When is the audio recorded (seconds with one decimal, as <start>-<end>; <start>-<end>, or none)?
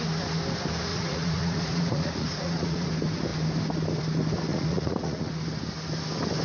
0.0-0.9; 2.9-4.5; 5.3-6.4